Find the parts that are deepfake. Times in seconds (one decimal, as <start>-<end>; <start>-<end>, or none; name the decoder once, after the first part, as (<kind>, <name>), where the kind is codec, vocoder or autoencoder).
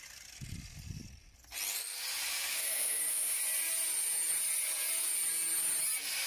2.5-3.4 (autoencoder, DAC-VAE)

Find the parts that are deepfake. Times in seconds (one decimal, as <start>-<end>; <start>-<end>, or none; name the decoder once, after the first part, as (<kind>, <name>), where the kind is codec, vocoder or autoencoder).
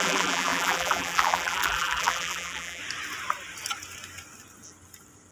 0.0-2.8 (vocoder, BigVGAN v2)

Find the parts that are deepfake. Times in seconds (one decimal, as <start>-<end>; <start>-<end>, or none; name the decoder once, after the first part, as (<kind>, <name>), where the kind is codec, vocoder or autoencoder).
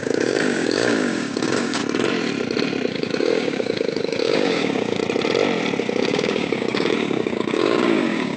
0.0-1.8 (codec, DAC); 2.9-5.0; 5.8-8.4